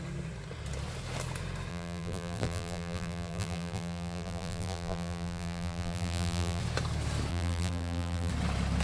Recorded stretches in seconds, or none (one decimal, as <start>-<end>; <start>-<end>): 0.0-1.7; 6.6-7.3; 8.3-8.8